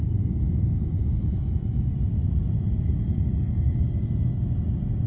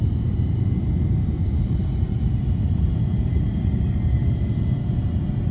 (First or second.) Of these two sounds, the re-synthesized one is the second